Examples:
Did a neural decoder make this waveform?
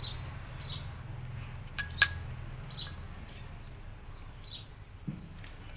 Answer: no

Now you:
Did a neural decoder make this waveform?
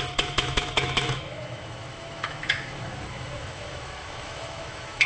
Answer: yes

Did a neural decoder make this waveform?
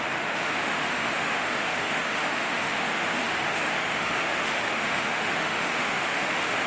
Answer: yes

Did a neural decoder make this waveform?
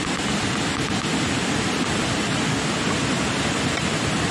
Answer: no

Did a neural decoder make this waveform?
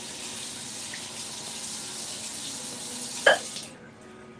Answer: no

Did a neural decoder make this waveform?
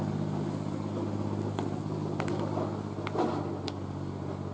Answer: no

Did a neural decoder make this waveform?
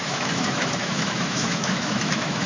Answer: yes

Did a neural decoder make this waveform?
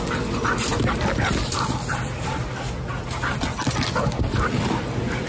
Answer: no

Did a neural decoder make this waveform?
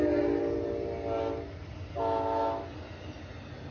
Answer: no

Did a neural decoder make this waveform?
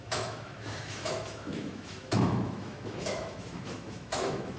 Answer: yes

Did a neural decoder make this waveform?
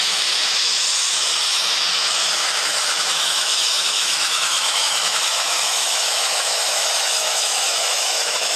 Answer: yes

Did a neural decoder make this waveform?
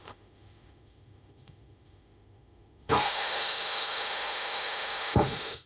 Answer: yes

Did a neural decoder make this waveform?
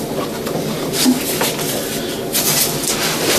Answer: no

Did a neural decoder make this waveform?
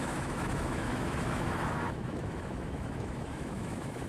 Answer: yes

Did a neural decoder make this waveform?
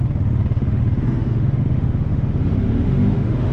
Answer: yes